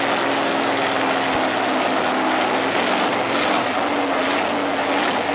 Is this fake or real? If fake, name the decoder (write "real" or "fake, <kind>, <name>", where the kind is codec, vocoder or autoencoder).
real